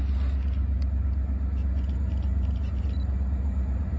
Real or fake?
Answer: real